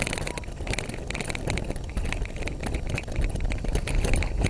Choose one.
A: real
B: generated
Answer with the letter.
A